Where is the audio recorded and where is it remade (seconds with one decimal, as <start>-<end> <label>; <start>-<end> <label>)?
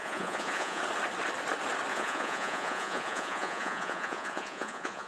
0.0-0.8 remade; 0.8-1.9 recorded; 1.9-5.1 remade